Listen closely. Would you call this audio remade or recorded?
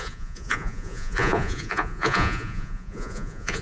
remade